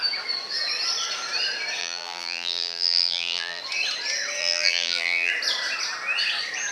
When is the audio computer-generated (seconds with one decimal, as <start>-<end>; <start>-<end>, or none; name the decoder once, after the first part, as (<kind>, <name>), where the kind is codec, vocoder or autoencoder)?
1.8-3.6 (vocoder, BigVGAN v2); 4.4-5.3